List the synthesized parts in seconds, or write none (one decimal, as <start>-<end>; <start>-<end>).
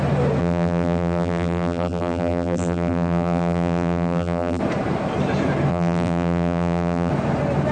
0.4-4.6; 5.7-7.1